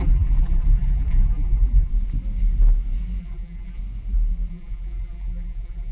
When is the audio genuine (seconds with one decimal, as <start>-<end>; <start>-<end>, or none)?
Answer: 1.9-3.2; 3.8-4.5